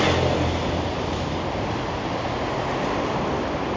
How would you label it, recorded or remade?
recorded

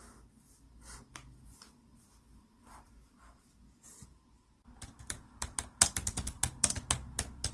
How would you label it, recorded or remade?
recorded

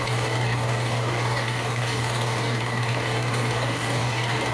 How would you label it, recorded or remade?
remade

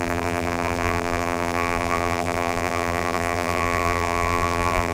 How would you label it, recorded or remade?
remade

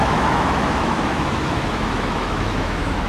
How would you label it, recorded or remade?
remade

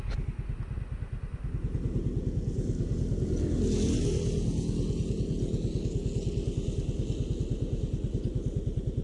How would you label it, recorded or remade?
recorded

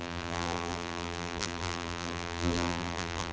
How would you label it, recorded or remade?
remade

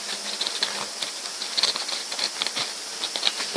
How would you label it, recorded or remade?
recorded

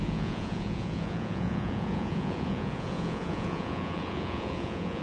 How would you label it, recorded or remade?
remade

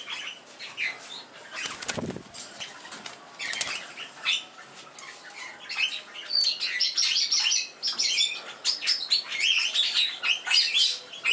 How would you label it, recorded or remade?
recorded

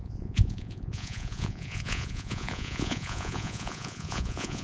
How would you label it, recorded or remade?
remade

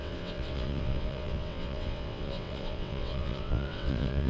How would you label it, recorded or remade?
remade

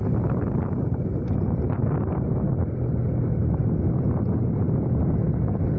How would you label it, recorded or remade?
recorded